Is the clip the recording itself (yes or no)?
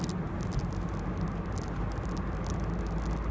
yes